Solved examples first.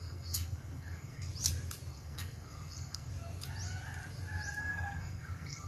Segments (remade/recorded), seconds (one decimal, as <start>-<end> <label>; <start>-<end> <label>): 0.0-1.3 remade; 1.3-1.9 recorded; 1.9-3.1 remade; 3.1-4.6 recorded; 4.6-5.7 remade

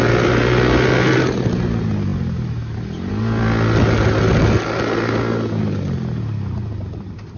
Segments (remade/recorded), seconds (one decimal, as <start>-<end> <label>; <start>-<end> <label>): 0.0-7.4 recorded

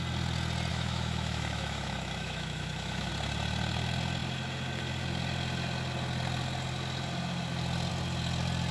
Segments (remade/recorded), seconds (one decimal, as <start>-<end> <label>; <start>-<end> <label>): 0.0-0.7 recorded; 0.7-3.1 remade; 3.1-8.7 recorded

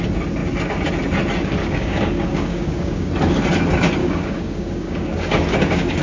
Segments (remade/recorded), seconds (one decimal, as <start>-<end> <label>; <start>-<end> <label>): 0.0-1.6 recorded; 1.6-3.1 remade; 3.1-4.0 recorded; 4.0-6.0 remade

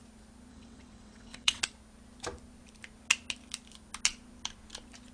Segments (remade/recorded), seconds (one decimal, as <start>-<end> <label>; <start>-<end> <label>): 0.0-0.5 recorded; 0.5-1.6 remade; 1.6-5.1 recorded

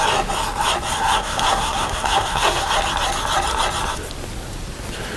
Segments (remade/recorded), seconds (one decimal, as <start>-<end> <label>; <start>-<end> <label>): 0.0-0.9 recorded; 0.9-2.7 remade; 2.7-5.2 recorded